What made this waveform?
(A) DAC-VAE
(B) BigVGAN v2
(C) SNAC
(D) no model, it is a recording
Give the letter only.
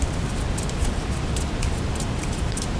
B